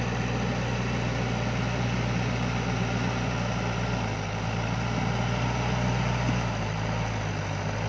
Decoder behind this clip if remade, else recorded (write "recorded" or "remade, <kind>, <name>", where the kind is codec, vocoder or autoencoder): recorded